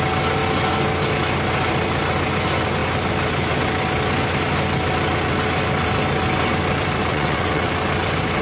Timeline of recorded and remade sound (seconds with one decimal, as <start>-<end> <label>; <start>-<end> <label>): 0.0-7.1 recorded; 7.1-7.7 remade; 7.7-8.4 recorded